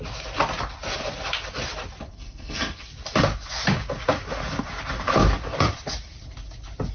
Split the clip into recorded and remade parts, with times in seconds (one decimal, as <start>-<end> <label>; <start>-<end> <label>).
0.0-2.1 recorded; 2.1-2.9 remade; 2.9-6.9 recorded